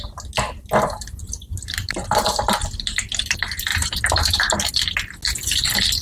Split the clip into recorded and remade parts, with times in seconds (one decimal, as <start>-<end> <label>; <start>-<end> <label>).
0.0-1.2 recorded; 1.2-2.4 remade; 2.4-3.7 recorded; 3.7-4.4 remade; 4.4-6.0 recorded